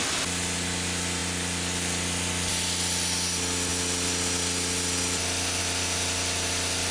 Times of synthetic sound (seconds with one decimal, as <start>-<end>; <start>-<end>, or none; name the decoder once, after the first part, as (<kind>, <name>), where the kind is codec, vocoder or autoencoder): none